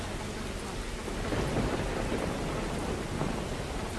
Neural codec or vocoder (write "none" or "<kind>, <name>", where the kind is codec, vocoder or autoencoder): none